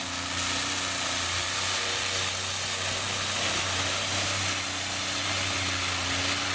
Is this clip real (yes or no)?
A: yes